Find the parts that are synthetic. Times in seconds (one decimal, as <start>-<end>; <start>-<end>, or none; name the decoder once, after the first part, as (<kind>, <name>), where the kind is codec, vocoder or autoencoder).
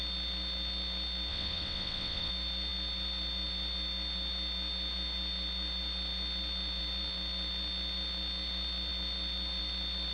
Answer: 1.3-2.3 (vocoder, WaveNeXt)